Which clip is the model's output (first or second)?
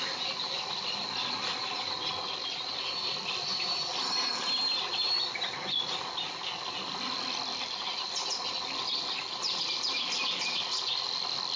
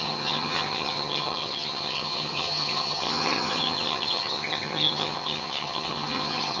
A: second